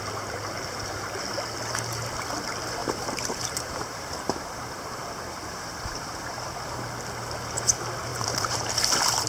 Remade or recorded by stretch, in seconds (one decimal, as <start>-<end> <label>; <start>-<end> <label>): 0.0-2.8 recorded; 2.8-6.8 remade; 6.8-8.1 recorded; 8.1-8.7 remade; 8.7-9.3 recorded